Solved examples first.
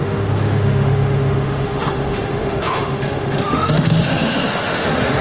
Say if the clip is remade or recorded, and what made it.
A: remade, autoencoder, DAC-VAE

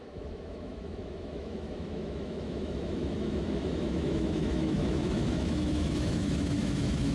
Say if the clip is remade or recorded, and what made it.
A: remade, autoencoder, DAC-VAE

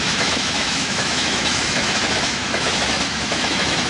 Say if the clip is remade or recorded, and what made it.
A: remade, autoencoder, DAC-VAE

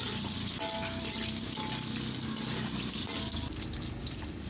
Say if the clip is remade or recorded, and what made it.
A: recorded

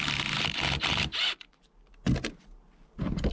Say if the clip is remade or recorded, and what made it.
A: recorded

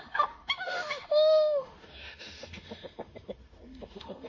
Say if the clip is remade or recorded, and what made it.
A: remade, autoencoder, DAC-VAE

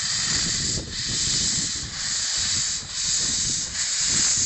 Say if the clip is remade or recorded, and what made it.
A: recorded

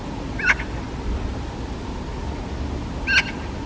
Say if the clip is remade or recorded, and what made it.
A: recorded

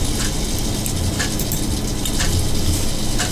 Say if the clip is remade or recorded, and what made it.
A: recorded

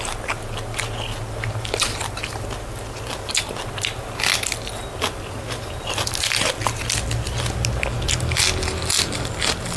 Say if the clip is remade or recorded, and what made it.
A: recorded